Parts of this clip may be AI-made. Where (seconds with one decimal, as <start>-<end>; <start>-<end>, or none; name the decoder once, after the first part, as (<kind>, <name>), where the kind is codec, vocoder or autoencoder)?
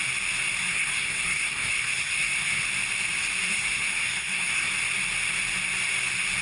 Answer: 0.6-2.7 (codec, SNAC); 3.5-4.7